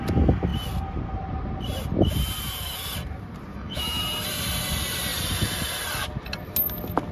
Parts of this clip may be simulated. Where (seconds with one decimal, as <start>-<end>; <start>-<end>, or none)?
3.5-4.0